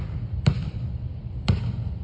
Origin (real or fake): real